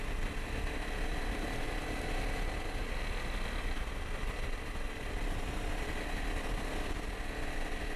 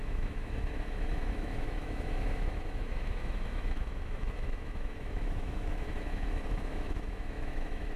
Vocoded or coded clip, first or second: second